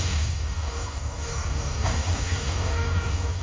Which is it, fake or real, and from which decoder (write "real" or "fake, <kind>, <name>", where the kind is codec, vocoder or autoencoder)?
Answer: fake, codec, DAC